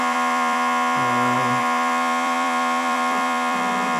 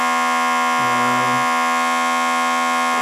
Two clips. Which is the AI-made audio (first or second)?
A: first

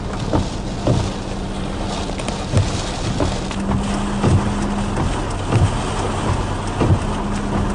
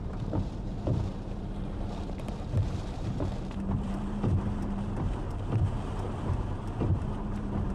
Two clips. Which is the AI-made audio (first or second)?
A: second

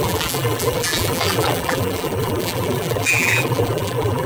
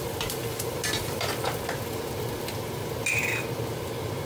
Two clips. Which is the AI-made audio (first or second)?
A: first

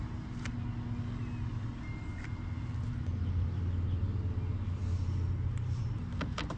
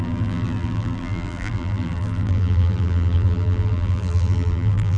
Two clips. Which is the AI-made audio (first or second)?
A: second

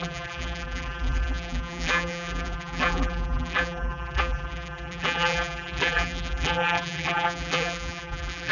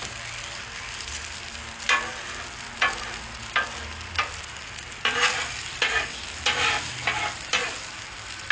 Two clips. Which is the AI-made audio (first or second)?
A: first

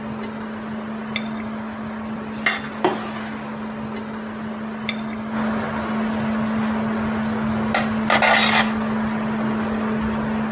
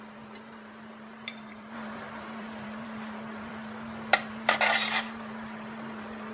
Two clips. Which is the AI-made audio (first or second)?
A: second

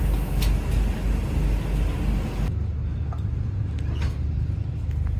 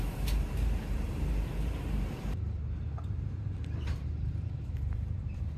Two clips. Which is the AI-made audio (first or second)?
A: second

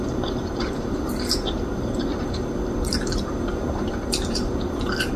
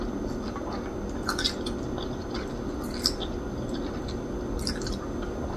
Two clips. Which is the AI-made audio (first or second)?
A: first